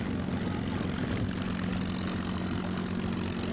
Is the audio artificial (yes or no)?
no